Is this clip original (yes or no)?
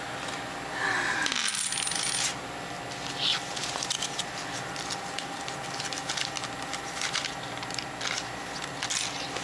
yes